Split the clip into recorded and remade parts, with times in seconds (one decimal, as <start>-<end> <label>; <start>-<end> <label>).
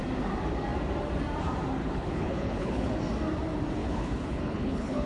0.0-1.8 recorded; 1.8-2.9 remade; 2.9-3.8 recorded; 3.8-5.1 remade